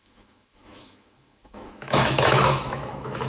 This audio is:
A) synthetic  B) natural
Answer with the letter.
A